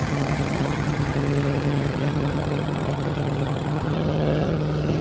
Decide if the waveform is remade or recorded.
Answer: remade